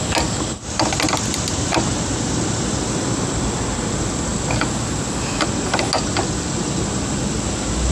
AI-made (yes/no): no